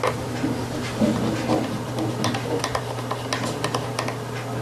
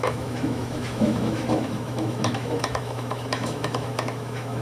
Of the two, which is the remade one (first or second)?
second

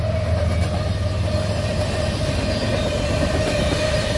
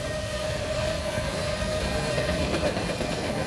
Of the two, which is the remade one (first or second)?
second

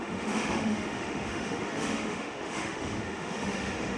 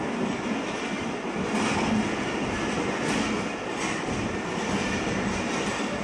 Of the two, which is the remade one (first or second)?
first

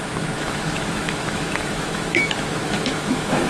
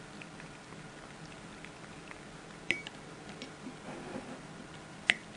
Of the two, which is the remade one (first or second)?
first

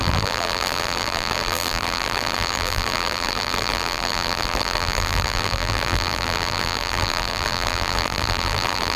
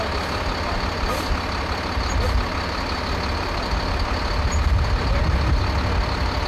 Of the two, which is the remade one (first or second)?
first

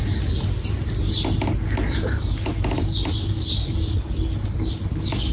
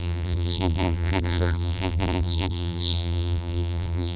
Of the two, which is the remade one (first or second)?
second